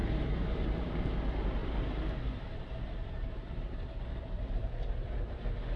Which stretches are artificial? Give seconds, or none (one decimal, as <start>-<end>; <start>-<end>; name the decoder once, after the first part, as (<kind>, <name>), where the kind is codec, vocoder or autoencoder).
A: 0.0-0.9 (vocoder, BigVGAN v2); 1.6-5.1